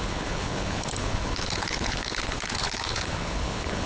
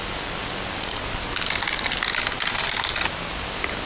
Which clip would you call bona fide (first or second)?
second